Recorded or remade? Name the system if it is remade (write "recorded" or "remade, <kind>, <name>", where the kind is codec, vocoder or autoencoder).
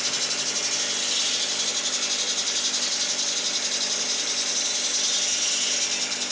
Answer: recorded